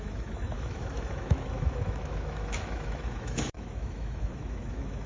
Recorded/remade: remade